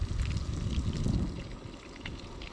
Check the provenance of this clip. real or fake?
real